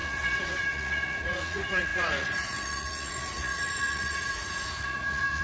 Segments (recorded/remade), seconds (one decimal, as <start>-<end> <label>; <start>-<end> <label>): 0.0-5.4 remade